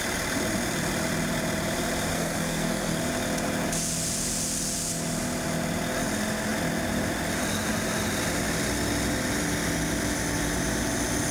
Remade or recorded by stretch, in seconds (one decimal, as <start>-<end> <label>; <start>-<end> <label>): 0.0-2.1 recorded; 2.1-3.0 remade; 3.0-11.3 recorded